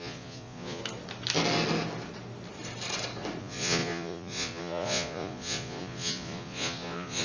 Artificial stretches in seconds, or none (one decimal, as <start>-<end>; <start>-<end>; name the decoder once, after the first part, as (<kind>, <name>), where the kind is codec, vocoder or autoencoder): 0.0-0.8 (vocoder, Vocos); 3.4-7.2